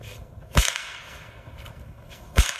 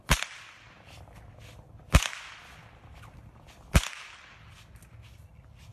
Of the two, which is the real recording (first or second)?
second